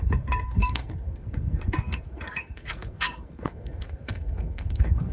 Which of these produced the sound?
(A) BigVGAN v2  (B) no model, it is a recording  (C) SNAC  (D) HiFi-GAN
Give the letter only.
C